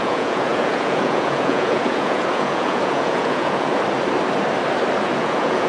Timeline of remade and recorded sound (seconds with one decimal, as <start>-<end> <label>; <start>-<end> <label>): 0.0-3.7 remade; 3.7-5.0 recorded; 5.0-5.7 remade

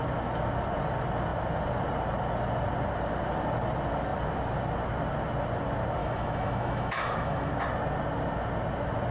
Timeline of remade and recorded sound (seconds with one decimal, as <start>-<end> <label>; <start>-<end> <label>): 0.0-6.0 recorded; 6.0-7.5 remade; 7.5-9.1 recorded

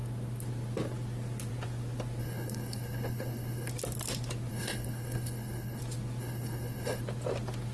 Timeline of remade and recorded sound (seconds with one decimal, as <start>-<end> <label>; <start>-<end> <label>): 0.0-2.2 recorded; 2.2-3.7 remade; 3.7-4.5 recorded; 4.5-5.8 remade; 5.8-6.2 recorded; 6.2-7.0 remade; 7.0-7.7 recorded

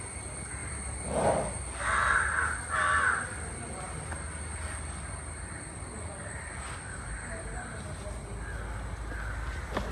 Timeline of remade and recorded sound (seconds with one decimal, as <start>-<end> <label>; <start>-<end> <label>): 0.0-9.9 recorded

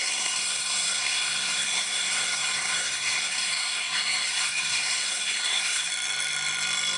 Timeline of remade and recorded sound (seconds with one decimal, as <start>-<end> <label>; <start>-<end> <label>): 0.0-5.9 remade; 5.9-7.0 recorded

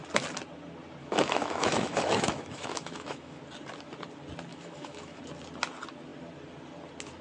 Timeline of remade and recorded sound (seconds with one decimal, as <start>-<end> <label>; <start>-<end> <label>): 0.0-1.0 recorded; 1.0-3.4 remade; 3.4-4.5 recorded; 4.5-5.2 remade; 5.2-7.2 recorded

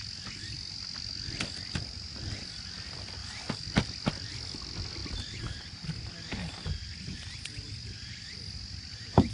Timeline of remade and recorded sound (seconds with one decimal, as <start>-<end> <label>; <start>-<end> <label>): 0.0-9.3 recorded